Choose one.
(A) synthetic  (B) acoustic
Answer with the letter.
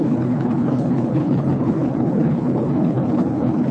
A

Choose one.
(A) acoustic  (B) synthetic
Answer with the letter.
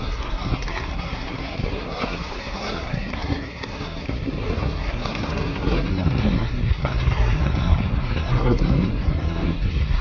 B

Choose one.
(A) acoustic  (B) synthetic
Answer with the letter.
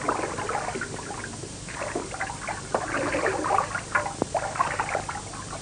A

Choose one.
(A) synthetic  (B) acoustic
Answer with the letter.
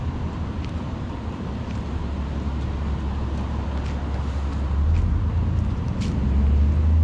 B